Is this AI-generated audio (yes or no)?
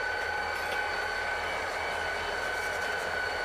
no